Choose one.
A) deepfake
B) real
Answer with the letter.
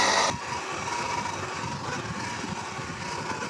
B